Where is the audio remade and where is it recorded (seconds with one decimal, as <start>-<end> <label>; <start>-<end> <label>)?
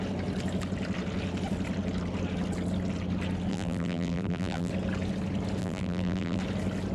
0.0-3.5 recorded; 3.5-4.7 remade; 4.7-5.6 recorded; 5.6-6.4 remade; 6.4-6.9 recorded